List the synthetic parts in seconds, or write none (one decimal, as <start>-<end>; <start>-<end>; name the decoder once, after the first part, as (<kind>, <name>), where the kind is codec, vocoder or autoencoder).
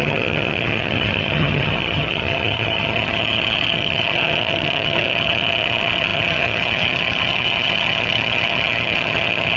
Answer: 0.0-9.6 (vocoder, HiFi-GAN)